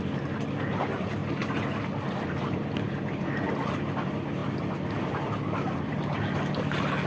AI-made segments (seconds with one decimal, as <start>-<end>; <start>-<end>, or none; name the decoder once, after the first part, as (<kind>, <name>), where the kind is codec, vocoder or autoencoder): none